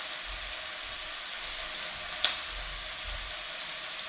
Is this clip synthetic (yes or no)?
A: no